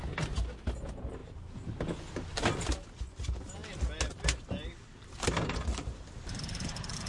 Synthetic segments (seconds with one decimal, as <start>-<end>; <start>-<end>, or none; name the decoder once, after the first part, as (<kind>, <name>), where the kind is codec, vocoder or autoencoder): none